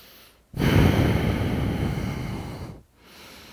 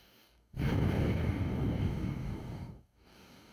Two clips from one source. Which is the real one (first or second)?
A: first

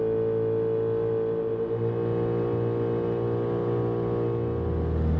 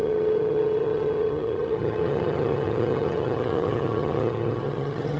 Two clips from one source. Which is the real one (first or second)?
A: first